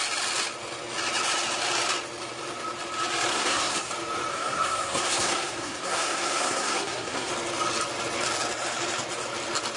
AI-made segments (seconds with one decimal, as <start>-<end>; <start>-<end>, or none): 3.3-3.9; 4.3-7.3